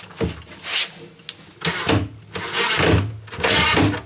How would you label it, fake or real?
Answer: real